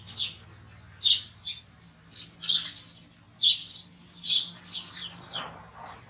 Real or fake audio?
real